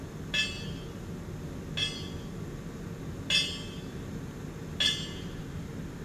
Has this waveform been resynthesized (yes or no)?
no